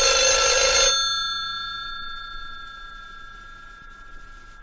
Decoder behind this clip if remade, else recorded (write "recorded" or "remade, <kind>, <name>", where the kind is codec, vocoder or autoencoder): recorded